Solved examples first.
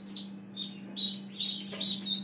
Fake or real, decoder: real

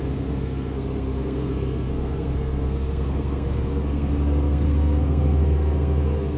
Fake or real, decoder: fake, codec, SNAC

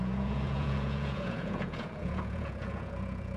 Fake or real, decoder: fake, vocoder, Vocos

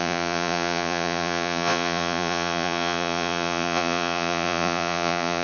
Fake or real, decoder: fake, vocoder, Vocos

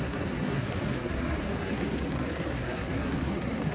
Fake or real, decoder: fake, codec, SNAC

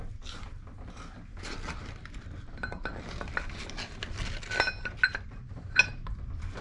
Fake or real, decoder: real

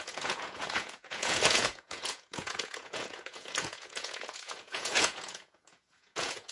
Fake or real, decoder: fake, vocoder, Vocos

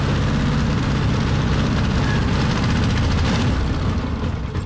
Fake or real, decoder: real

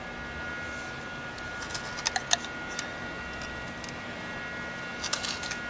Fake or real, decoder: real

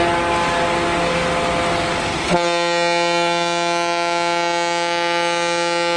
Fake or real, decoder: real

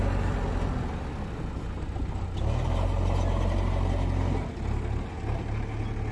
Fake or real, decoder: real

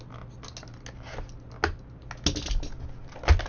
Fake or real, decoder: real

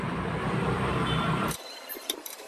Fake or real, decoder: fake, vocoder, BigVGAN v2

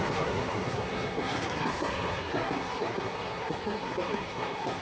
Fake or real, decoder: fake, codec, SNAC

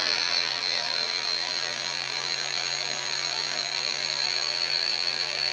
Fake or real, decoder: fake, vocoder, BigVGAN v2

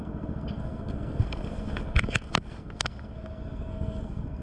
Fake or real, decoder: fake, codec, SNAC